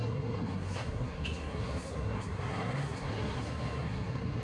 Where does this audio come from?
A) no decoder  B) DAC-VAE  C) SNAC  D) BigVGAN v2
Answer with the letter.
C